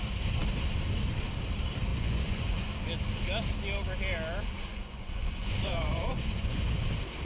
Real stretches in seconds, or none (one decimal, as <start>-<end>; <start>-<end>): 0.0-1.9; 2.7-4.7; 6.7-7.2